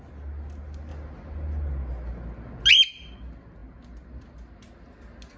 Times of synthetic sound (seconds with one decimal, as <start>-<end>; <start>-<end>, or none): none